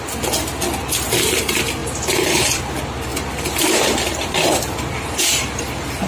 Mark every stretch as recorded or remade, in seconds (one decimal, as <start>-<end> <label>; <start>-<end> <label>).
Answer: 0.0-1.8 recorded; 1.8-2.6 remade; 2.6-3.1 recorded; 3.1-6.1 remade